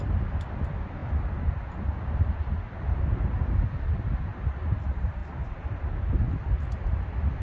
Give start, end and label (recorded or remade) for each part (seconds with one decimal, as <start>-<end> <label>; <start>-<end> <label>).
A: 0.0-7.4 recorded